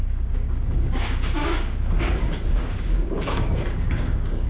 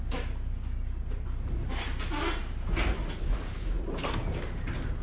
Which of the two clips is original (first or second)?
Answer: second